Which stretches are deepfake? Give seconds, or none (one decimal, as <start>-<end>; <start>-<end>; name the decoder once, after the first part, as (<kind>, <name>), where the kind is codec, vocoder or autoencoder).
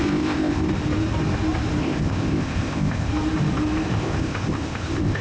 0.0-0.7 (codec, ZipCodec); 1.8-3.1; 3.9-5.2